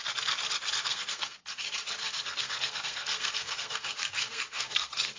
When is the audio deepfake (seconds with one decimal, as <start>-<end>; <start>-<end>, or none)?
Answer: 0.8-1.4; 2.0-5.2